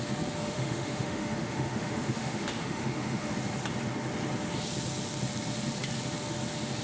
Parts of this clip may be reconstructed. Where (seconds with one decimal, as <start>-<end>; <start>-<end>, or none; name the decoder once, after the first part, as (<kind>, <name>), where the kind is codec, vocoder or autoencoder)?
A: 0.4-3.3 (autoencoder, DAC-VAE)